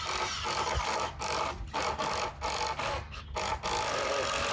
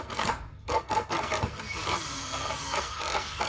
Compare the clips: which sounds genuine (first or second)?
first